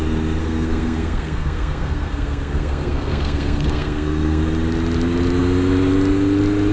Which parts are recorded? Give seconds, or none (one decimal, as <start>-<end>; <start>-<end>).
0.0-0.4; 4.4-6.7